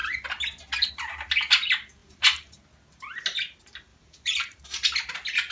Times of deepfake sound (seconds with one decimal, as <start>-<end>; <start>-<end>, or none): 2.0-2.6; 3.9-4.6